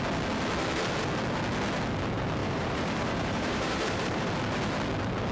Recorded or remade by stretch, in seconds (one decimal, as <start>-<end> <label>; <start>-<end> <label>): 0.0-2.4 recorded; 2.4-4.3 remade; 4.3-5.3 recorded